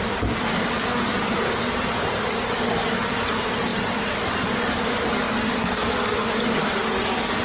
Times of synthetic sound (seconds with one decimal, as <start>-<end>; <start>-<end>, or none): none